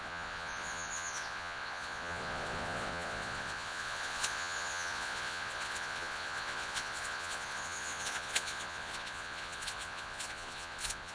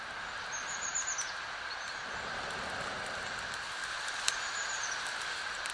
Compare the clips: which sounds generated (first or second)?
first